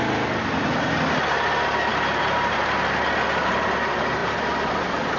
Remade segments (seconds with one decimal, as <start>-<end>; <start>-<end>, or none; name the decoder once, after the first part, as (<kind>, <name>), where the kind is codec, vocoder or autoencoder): none